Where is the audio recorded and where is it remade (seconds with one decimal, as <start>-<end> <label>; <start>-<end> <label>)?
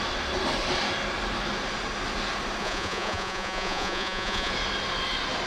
0.0-2.6 recorded; 2.6-4.5 remade; 4.5-5.5 recorded